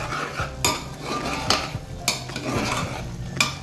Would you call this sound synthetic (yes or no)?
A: no